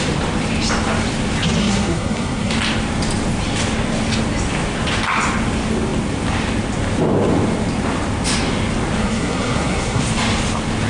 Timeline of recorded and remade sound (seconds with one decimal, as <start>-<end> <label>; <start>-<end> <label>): 0.0-1.6 recorded; 1.6-2.5 remade; 2.5-9.0 recorded; 9.0-10.0 remade; 10.0-10.9 recorded